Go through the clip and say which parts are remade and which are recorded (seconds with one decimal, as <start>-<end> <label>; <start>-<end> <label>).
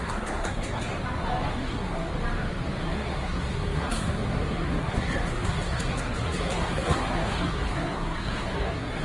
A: 0.0-0.9 remade; 0.9-1.5 recorded; 1.5-2.1 remade; 2.1-2.8 recorded; 2.8-9.0 remade